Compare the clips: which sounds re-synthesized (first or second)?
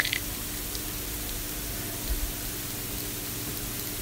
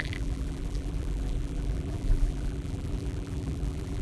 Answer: second